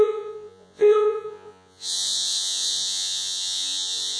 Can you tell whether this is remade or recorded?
remade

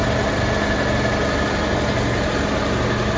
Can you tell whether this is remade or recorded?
recorded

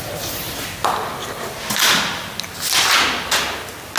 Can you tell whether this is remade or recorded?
recorded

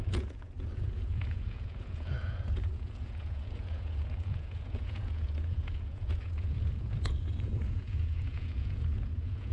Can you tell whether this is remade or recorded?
remade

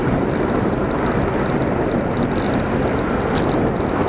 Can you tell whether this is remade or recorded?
recorded